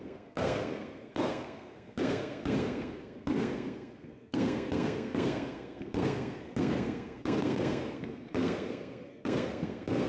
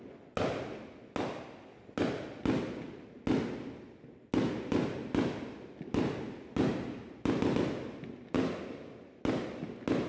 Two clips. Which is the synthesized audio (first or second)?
first